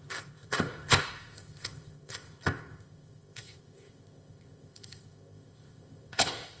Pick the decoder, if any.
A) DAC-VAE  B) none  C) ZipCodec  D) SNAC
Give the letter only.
C